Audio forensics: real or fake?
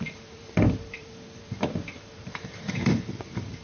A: fake